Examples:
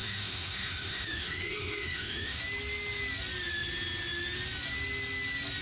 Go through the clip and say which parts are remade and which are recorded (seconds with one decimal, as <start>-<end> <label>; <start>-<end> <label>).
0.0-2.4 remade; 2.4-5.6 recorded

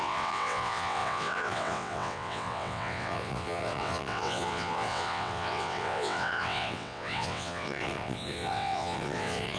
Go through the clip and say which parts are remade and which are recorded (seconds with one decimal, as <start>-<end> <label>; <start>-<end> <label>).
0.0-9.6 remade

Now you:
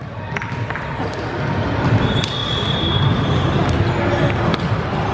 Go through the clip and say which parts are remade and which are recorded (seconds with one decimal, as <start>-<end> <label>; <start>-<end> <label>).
0.0-5.1 recorded

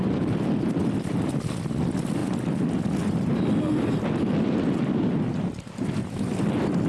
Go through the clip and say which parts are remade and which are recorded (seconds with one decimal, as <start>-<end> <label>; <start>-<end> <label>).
0.0-6.9 recorded

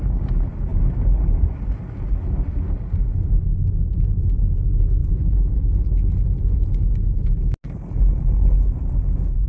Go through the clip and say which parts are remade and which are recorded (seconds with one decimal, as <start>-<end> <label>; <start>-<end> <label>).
0.0-9.5 recorded